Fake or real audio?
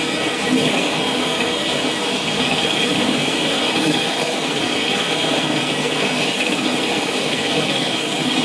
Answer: fake